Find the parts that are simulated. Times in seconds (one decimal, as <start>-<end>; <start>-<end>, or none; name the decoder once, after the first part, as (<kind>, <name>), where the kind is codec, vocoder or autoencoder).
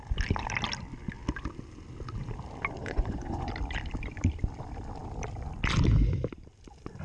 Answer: 2.8-3.5 (vocoder, Vocos)